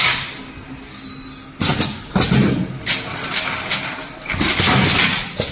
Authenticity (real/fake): real